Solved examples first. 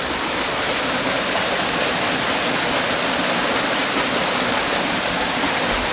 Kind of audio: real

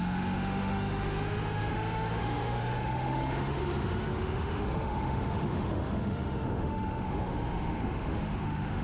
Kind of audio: fake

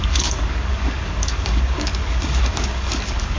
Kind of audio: fake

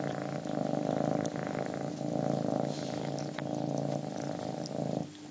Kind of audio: real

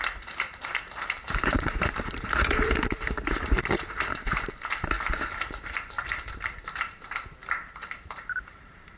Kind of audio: fake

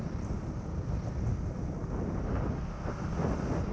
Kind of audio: real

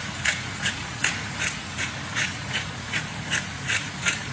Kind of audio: fake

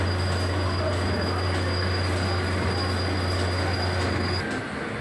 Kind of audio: real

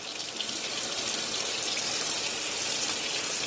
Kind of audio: real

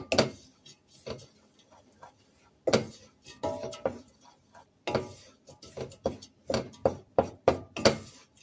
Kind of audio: real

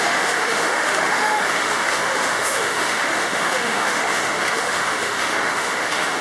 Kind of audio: fake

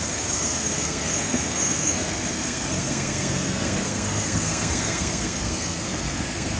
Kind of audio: fake